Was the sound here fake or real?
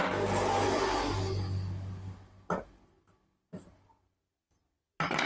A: real